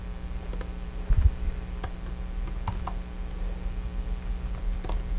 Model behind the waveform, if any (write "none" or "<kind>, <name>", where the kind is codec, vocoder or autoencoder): none